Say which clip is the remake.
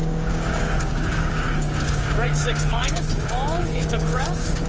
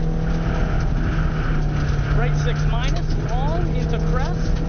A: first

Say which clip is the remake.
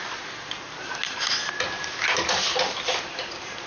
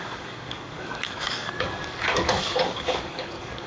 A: second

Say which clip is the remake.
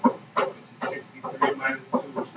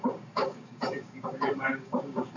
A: second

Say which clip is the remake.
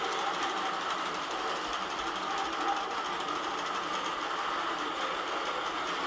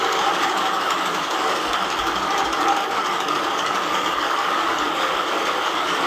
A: second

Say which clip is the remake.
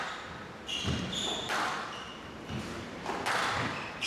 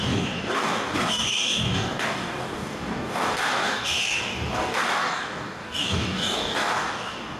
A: second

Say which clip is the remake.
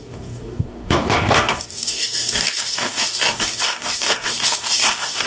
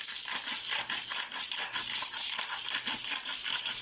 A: first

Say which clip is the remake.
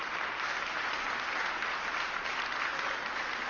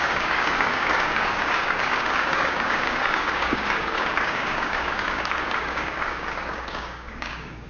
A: second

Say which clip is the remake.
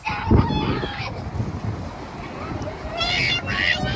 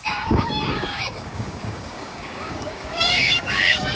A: second